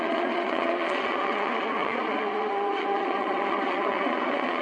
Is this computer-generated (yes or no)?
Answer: yes